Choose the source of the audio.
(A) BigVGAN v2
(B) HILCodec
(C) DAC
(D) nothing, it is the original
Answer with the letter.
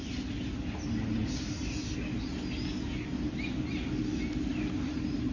D